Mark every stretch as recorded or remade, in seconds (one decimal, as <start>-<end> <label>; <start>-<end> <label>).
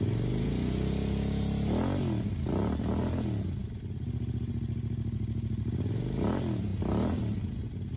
0.0-8.0 recorded